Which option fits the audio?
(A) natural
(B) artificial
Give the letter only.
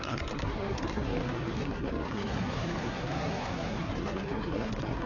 B